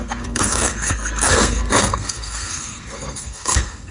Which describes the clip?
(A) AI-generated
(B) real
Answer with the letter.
A